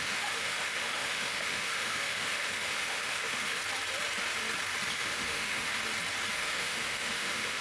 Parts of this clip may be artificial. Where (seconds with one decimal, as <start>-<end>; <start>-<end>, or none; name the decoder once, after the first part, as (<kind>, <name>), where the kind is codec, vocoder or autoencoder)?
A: 0.0-3.6 (autoencoder, DAC-VAE); 4.9-5.7; 6.3-7.6